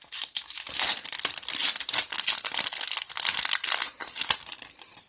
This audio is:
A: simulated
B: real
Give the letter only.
B